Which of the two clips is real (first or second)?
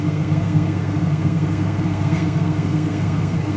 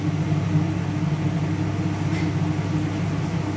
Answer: second